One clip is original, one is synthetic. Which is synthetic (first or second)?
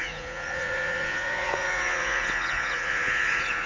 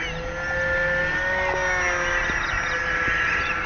first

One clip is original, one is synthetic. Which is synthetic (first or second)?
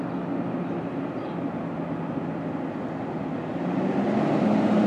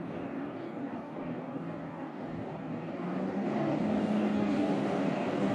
second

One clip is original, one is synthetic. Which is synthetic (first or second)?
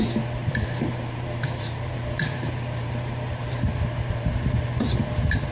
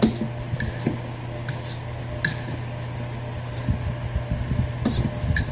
first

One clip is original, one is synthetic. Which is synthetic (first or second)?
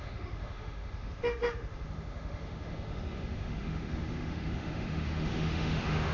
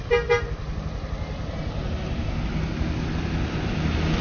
first